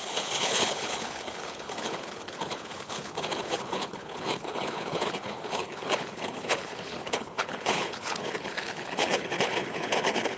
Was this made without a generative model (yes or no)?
no